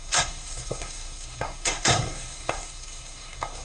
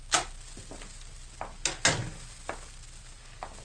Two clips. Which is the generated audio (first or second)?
first